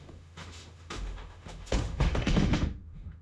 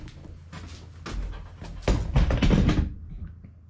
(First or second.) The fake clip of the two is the first